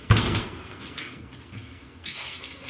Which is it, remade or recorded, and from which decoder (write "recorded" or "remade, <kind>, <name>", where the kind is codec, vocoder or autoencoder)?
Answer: remade, codec, SNAC